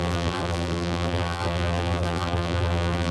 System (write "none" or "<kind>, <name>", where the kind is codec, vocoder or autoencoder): vocoder, BigVGAN v2